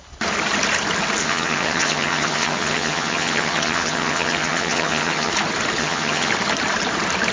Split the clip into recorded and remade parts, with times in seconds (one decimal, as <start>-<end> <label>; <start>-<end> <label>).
0.0-1.2 recorded; 1.2-5.3 remade; 5.3-5.8 recorded; 5.8-6.3 remade; 6.3-7.3 recorded